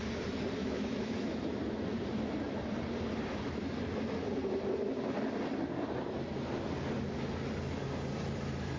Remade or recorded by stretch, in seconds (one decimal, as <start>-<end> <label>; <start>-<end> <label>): 0.0-0.6 recorded; 0.6-1.3 remade; 1.3-8.8 recorded

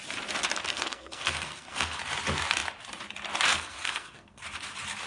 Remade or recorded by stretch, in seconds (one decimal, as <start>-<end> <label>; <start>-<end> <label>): 0.0-0.7 recorded; 0.7-2.0 remade; 2.0-3.5 recorded; 3.5-4.4 remade; 4.4-5.1 recorded

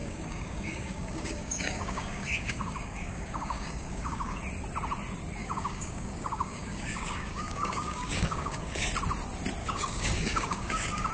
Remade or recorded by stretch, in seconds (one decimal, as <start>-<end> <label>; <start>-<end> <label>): 0.0-4.4 remade; 4.4-5.4 recorded; 5.4-8.9 remade; 8.9-9.6 recorded; 9.6-11.1 remade

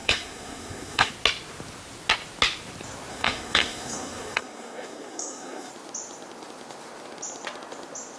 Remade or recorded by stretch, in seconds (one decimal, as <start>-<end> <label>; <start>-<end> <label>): 0.0-1.1 remade; 1.1-3.1 recorded; 3.1-5.7 remade; 5.7-8.2 recorded

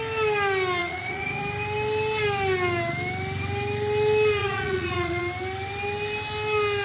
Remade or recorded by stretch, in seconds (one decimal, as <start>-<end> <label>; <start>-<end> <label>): 0.0-0.8 recorded; 0.8-1.4 remade; 1.4-4.4 recorded; 4.4-5.2 remade; 5.2-6.8 recorded

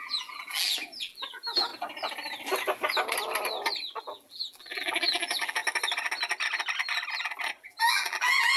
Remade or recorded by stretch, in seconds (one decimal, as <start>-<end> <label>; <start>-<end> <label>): 0.0-1.7 remade; 1.7-4.0 recorded; 4.0-5.6 remade; 5.6-7.6 recorded; 7.6-8.6 remade

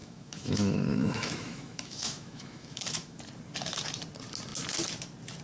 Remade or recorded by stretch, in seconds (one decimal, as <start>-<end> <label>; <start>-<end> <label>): 0.0-3.2 remade; 3.2-5.4 recorded

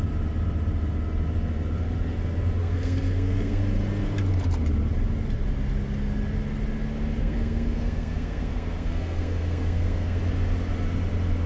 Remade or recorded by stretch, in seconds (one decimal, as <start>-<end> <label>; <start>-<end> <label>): 0.0-2.6 recorded; 2.6-3.6 remade; 3.6-7.2 recorded; 7.2-10.2 remade; 10.2-11.5 recorded